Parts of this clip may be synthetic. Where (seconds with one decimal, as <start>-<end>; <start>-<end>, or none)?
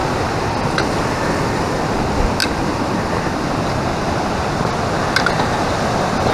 0.0-0.5